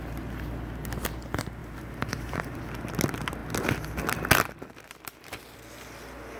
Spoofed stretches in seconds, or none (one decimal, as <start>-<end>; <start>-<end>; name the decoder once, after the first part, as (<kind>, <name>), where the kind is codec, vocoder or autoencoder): 1.6-2.6 (vocoder, BigVGAN v2)